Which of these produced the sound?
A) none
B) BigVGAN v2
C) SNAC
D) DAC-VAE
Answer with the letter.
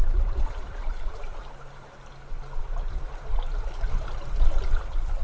A